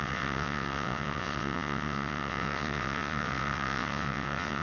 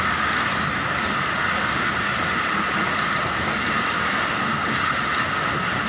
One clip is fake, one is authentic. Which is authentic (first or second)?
second